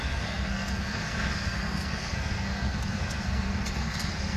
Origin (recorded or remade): remade